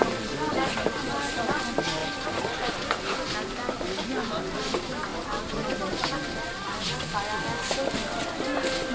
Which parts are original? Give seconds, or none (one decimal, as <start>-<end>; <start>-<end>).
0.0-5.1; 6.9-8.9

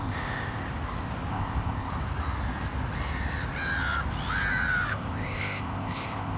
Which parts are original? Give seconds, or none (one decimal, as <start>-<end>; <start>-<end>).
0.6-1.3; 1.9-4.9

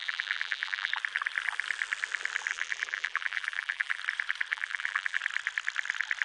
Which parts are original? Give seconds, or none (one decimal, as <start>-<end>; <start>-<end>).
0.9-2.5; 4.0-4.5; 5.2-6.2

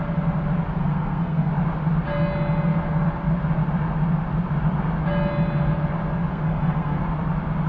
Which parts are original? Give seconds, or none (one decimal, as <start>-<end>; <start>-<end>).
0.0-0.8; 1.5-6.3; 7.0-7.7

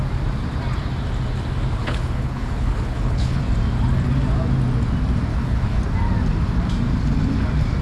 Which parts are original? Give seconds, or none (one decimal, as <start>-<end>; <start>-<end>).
0.0-1.8; 3.4-5.3; 5.8-7.8

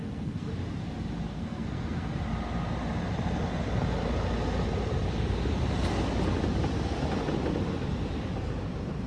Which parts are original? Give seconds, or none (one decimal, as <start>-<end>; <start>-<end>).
0.5-1.3; 2.2-9.1

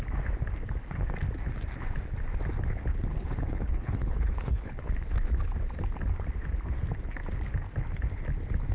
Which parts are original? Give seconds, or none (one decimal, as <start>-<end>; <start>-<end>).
0.0-3.1; 4.9-8.7

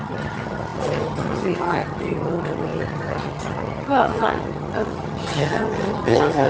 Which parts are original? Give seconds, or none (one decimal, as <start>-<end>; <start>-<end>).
none